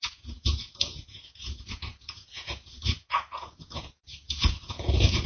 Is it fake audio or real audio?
fake